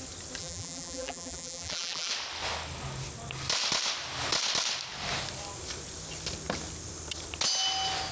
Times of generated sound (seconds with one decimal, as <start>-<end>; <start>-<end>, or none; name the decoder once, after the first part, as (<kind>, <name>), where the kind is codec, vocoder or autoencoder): 0.4-2.1 (vocoder, BigVGAN v2)